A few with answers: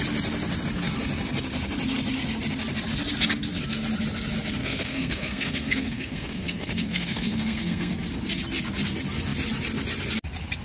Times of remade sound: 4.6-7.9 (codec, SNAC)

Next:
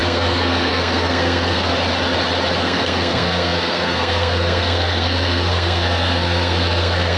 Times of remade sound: 0.0-1.7 (codec, SNAC); 2.6-7.2

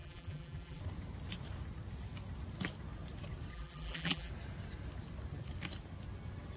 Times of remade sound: 0.0-0.8 (vocoder, BigVGAN v2); 3.5-4.3

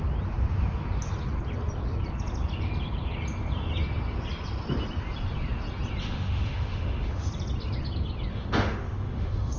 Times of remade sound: 6.0-7.3 (autoencoder, DAC-VAE); 8.3-9.6

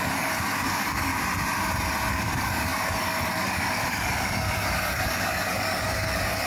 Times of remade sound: 0.0-1.1 (codec, DAC); 2.1-6.5

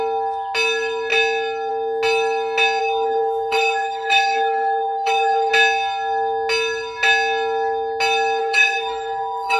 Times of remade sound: 2.8-5.5 (codec, SNAC); 8.4-9.6

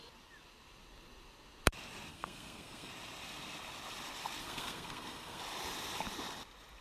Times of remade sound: 2.1-2.9 (codec, SNAC); 4.4-5.4